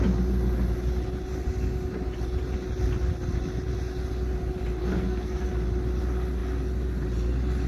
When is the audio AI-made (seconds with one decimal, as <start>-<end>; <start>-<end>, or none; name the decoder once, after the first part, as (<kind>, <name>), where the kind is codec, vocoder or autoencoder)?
4.8-5.5 (codec, SNAC)